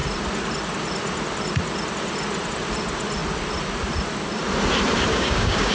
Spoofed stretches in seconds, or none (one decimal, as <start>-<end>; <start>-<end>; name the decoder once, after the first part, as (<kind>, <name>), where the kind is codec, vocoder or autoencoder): 5.1-5.7 (codec, DAC)